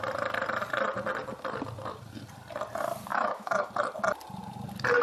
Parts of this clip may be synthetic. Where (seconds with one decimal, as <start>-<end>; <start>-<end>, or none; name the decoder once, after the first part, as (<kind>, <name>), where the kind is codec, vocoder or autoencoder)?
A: 3.1-3.7 (autoencoder, DAC-VAE)